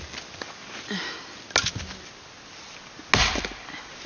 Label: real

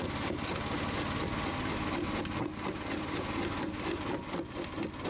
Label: real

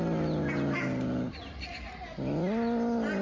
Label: real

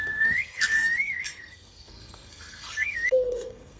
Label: fake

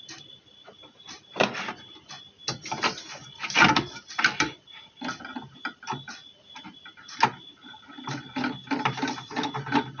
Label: real